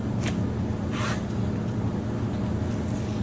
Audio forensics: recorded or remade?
recorded